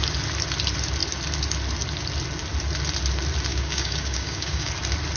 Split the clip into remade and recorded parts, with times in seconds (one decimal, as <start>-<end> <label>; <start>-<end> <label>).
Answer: 0.0-3.5 recorded; 3.5-4.7 remade; 4.7-5.2 recorded